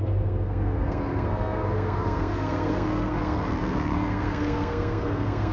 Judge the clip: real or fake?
fake